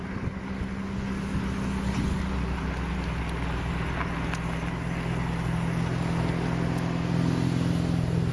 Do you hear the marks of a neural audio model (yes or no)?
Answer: no